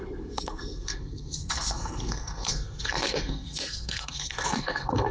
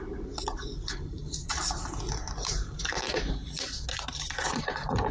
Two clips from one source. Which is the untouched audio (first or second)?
second